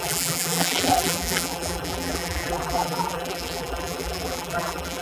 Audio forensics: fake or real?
fake